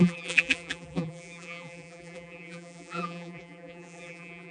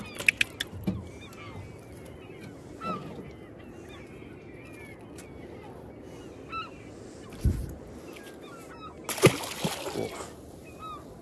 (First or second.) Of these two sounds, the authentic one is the second